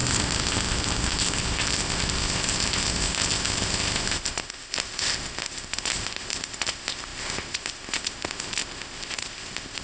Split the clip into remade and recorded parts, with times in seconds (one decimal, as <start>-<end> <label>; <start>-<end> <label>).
0.0-9.8 remade